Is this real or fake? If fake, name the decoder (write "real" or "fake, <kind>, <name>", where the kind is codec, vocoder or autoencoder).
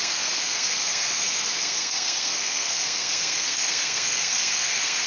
fake, codec, SNAC